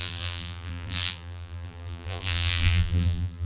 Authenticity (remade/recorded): remade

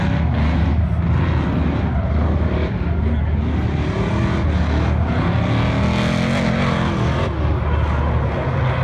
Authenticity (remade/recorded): recorded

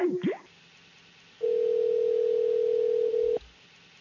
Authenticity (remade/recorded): recorded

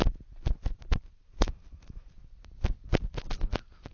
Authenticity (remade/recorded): remade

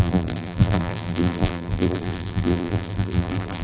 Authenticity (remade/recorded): remade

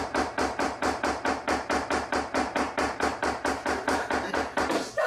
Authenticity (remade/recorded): remade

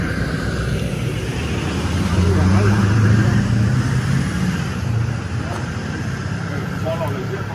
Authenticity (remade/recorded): remade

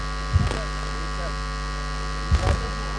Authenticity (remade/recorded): recorded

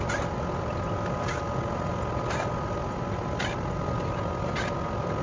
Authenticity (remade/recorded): recorded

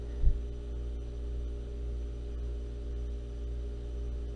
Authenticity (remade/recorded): recorded